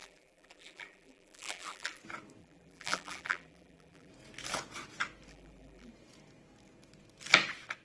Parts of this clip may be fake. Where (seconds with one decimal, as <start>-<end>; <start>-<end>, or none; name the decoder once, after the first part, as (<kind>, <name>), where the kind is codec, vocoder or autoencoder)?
0.0-2.0 (vocoder, BigVGAN v2); 2.4-4.1; 5.3-5.9